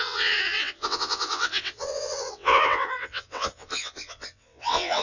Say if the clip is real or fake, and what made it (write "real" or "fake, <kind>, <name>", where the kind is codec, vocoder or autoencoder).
fake, vocoder, WaveNeXt